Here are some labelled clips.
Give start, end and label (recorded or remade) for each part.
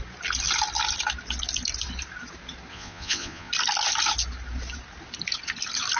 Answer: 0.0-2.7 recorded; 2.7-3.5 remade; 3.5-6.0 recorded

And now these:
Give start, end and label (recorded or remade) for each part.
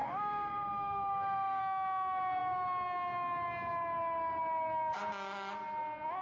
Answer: 0.0-1.6 remade; 1.6-6.2 recorded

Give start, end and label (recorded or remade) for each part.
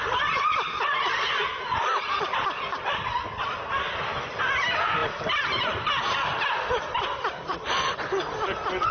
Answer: 0.0-8.9 recorded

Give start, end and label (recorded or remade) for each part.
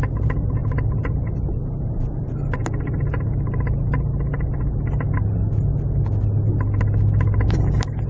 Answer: 0.0-8.1 recorded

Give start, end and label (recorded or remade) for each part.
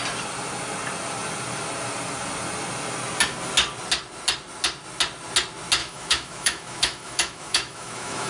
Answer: 0.0-5.8 recorded; 5.8-8.3 remade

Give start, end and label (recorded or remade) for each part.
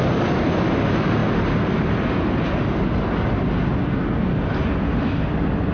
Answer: 0.0-5.7 recorded